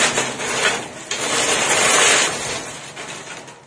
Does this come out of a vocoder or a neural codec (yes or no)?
no